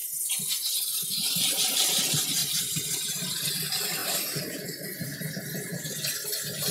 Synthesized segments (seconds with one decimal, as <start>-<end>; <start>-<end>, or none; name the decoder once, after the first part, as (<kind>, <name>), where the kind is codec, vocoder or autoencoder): 0.0-0.7 (vocoder, BigVGAN v2); 2.4-3.5; 4.0-5.2